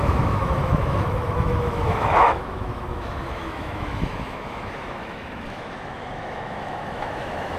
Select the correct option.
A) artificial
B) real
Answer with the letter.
A